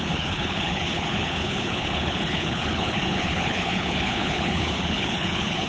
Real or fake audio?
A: fake